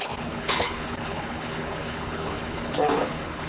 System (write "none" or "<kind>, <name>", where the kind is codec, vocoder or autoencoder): codec, HILCodec